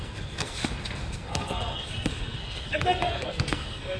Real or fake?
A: fake